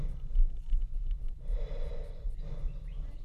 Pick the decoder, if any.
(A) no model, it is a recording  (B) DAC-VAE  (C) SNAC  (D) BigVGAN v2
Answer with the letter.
A